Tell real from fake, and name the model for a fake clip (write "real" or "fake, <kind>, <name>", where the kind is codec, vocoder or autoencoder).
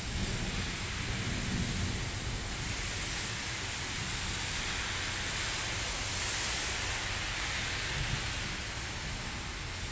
real